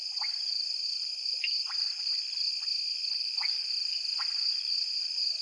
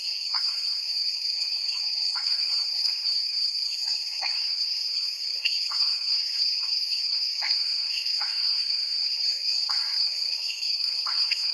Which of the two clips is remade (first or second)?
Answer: second